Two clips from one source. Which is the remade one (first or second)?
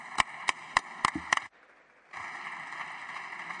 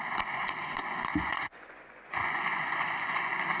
second